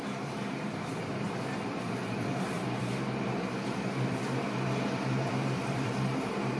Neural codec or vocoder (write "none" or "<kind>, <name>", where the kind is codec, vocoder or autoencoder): vocoder, BigVGAN v2